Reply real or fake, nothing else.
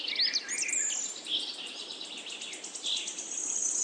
real